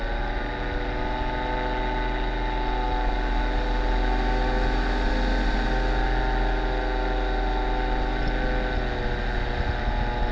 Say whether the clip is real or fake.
real